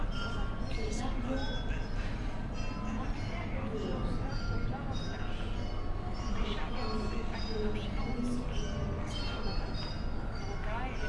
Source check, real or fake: real